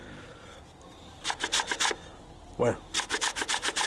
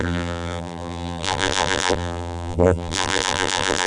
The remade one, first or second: second